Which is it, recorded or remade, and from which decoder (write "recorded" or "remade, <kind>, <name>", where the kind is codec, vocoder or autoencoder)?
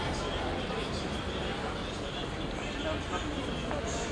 recorded